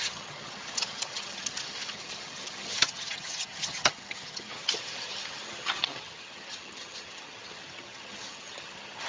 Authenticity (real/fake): fake